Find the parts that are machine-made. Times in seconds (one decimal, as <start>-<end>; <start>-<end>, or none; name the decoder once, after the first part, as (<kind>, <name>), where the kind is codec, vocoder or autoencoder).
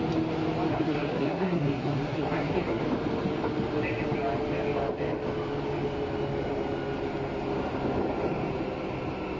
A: 0.7-2.8 (codec, SNAC)